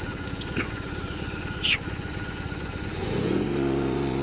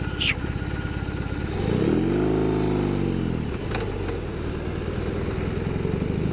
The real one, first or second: second